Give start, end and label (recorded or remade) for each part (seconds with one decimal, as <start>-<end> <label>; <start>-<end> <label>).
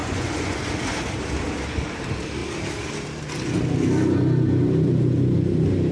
0.0-0.6 remade; 0.6-5.9 recorded